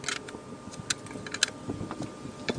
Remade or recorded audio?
recorded